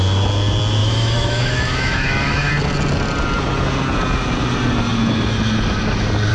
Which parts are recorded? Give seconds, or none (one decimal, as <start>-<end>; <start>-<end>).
0.0-0.8; 2.5-6.3